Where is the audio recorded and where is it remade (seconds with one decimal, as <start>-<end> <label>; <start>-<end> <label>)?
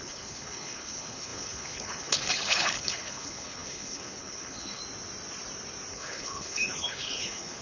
0.0-4.8 remade; 4.8-5.9 recorded; 5.9-7.6 remade